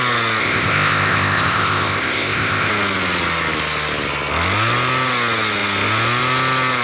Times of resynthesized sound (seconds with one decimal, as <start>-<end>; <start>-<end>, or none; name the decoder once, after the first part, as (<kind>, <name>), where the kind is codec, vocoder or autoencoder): 0.4-2.7 (codec, ZipCodec)